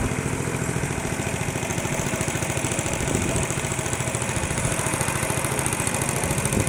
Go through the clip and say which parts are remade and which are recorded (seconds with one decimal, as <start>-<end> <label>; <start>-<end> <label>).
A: 0.0-1.7 recorded; 1.7-5.7 remade; 5.7-6.7 recorded